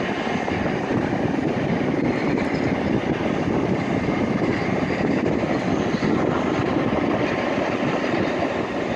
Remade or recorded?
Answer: remade